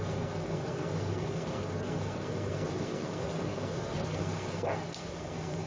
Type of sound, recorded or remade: remade